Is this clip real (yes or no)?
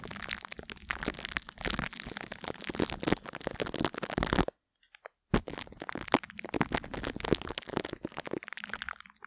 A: yes